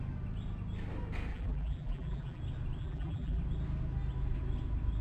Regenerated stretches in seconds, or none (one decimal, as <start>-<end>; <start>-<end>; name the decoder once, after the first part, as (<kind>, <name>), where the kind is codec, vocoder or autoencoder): 1.3-2.4 (vocoder, BigVGAN v2); 2.8-3.4